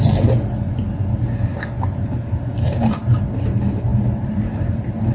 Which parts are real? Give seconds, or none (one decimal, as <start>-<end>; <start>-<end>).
0.0-1.5; 3.0-3.9; 4.5-5.1